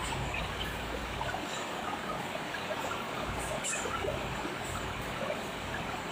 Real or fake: fake